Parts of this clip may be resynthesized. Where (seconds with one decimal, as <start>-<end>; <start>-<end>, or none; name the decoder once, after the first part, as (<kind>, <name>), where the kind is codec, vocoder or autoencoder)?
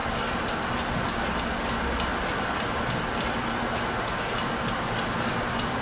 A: none